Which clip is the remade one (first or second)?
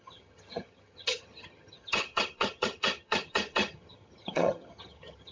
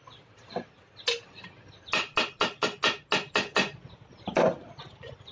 first